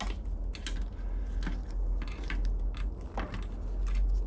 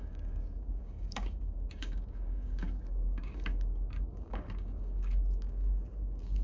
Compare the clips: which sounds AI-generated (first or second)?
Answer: second